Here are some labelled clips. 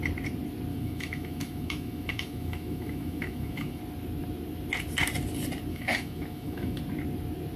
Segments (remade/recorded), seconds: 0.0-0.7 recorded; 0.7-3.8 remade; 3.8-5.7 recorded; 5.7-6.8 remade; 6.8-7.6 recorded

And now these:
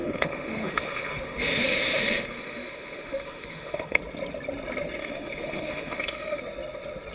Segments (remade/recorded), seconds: 0.0-4.0 remade; 4.0-5.0 recorded; 5.0-6.4 remade; 6.4-7.1 recorded

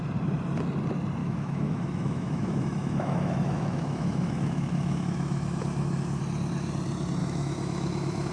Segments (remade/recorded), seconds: 0.0-1.2 recorded; 1.2-6.2 remade; 6.2-7.2 recorded; 7.2-8.3 remade

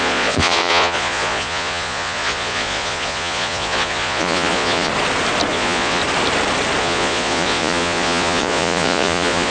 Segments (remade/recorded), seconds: 0.0-4.9 remade; 4.9-5.5 recorded; 5.5-6.0 remade; 6.0-6.8 recorded; 6.8-9.5 remade

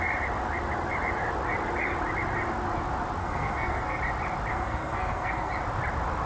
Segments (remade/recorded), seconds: 0.0-3.2 recorded; 3.2-4.0 remade; 4.0-4.5 recorded; 4.5-5.5 remade; 5.5-6.3 recorded

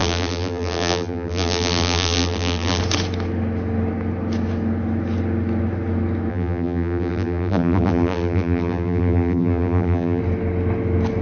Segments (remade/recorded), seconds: 0.0-2.8 remade; 2.8-6.3 recorded; 6.3-10.2 remade; 10.2-11.2 recorded